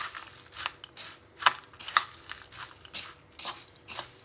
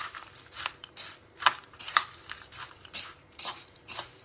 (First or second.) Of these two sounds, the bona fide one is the first